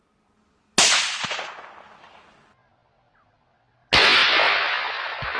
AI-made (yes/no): no